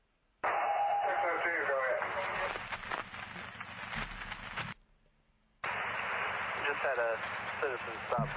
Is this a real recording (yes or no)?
yes